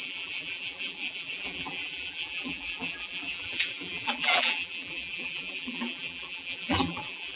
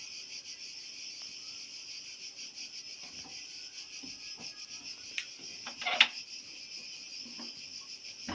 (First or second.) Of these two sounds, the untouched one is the second